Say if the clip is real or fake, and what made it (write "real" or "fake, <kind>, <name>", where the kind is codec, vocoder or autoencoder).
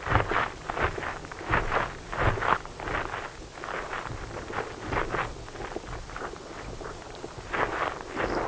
real